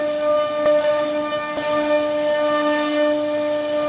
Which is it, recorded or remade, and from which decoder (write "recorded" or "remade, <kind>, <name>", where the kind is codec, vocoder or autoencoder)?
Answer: recorded